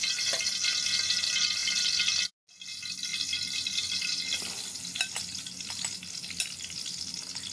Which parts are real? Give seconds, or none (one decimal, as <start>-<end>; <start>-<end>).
0.0-7.5